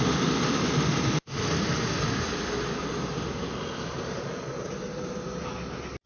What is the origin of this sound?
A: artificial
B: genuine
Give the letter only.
B